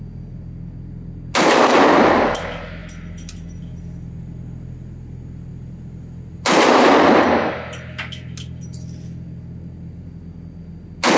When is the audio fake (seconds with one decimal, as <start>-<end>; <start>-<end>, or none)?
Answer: none